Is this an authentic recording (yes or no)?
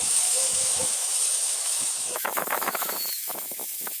no